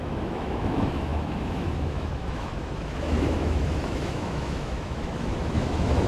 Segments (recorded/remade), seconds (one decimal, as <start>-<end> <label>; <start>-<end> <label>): 0.0-6.1 remade